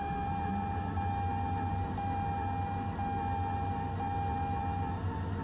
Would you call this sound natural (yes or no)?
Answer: yes